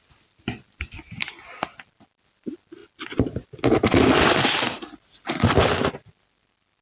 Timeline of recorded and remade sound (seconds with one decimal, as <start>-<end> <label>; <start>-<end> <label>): 0.0-6.8 recorded